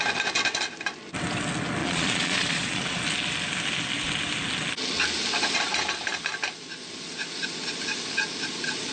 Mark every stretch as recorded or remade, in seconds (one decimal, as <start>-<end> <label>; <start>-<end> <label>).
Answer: 0.0-1.8 recorded; 1.8-3.0 remade; 3.0-8.9 recorded